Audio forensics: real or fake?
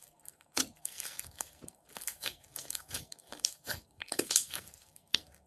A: fake